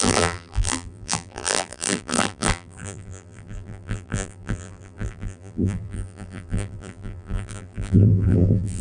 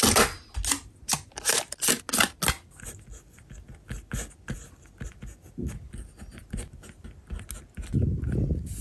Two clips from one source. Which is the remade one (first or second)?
first